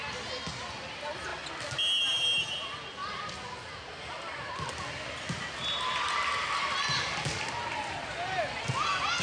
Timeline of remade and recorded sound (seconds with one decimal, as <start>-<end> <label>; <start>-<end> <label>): 0.0-9.2 recorded